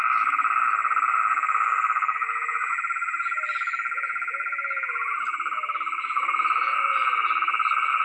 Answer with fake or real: fake